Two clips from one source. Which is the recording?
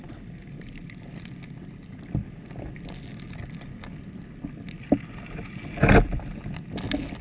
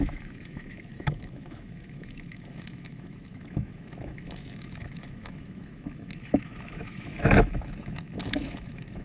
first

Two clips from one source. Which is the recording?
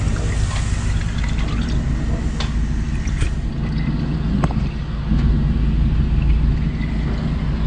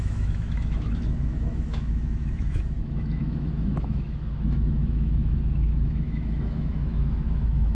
first